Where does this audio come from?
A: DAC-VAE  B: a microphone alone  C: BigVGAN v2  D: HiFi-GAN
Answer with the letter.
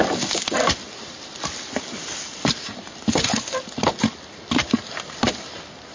B